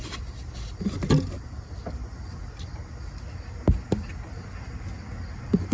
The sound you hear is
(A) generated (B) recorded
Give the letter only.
B